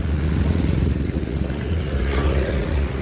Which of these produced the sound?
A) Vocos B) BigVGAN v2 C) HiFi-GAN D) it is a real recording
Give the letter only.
A